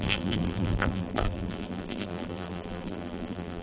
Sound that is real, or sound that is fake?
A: fake